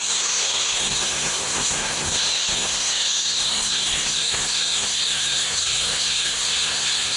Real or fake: fake